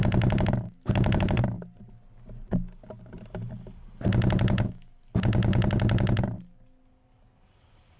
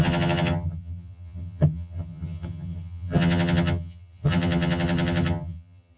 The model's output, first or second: second